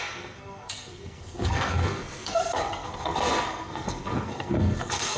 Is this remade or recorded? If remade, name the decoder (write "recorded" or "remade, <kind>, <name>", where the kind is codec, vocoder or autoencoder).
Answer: remade, codec, SNAC